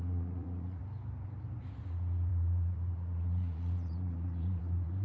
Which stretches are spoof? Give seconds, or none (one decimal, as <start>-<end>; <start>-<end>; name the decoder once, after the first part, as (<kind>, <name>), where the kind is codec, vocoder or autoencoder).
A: 0.0-0.8 (vocoder, Vocos); 1.9-5.0